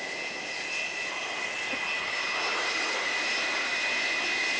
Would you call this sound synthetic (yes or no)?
no